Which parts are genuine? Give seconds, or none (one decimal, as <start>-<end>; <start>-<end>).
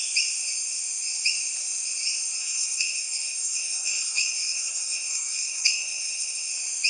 0.0-2.4; 6.5-6.9